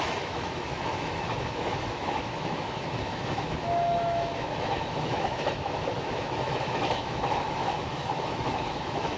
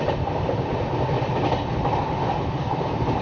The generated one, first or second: first